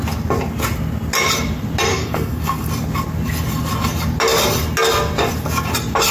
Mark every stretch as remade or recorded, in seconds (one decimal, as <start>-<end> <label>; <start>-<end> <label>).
0.0-1.9 recorded; 1.9-2.7 remade; 2.7-6.1 recorded